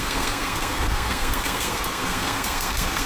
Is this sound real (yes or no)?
no